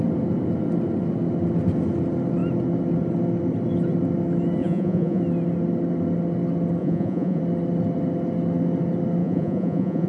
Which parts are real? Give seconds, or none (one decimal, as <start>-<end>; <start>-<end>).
0.0-4.6; 5.2-6.8; 7.4-9.2